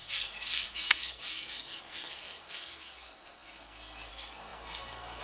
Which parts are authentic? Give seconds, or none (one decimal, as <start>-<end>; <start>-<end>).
none